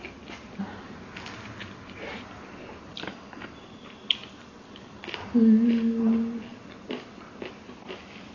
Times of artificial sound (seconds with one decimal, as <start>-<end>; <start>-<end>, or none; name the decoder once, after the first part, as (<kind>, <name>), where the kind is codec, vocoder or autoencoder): none